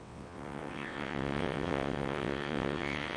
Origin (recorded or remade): remade